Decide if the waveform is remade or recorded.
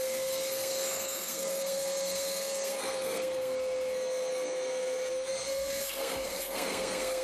remade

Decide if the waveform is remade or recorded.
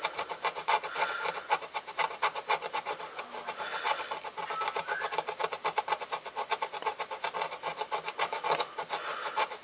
recorded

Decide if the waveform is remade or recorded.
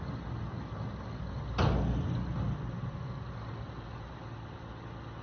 recorded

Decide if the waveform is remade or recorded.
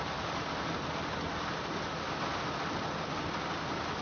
recorded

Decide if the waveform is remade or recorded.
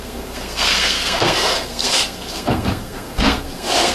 remade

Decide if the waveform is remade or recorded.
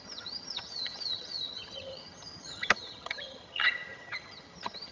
remade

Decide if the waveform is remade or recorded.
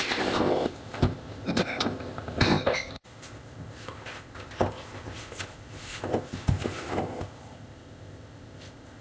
remade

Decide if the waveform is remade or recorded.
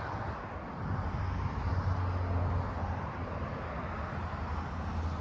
recorded